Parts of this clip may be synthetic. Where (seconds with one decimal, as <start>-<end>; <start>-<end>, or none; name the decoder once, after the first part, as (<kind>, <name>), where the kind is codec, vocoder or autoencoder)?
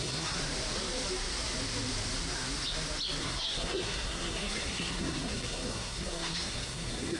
0.0-0.4 (codec, SNAC); 3.2-7.2